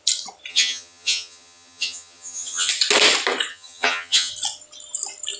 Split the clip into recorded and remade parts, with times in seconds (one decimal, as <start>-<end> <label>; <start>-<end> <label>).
0.0-0.5 recorded; 0.5-2.7 remade; 2.7-3.5 recorded; 3.5-4.3 remade; 4.3-5.4 recorded